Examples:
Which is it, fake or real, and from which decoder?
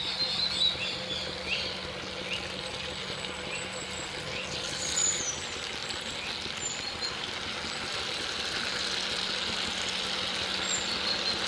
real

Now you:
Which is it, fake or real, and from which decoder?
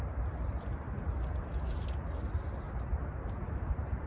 real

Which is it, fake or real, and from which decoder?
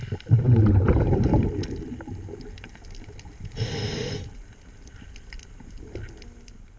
real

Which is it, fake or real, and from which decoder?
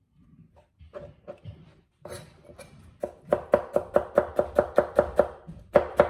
fake, vocoder, BigVGAN v2